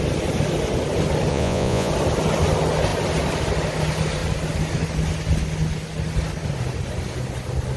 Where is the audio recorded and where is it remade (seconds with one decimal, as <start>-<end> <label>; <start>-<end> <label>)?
0.0-1.3 recorded; 1.3-1.9 remade; 1.9-7.8 recorded